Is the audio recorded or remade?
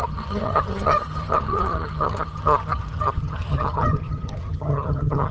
remade